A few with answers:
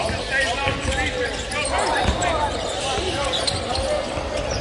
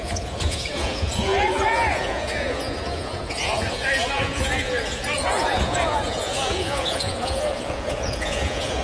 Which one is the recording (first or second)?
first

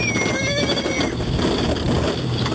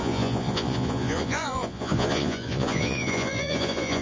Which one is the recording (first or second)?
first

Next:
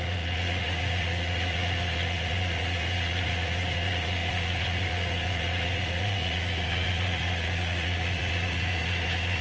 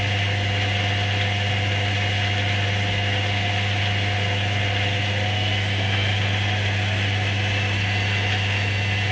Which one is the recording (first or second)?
second